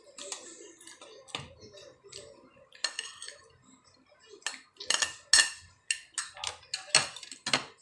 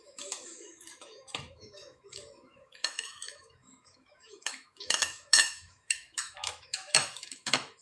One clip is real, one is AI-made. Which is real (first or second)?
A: first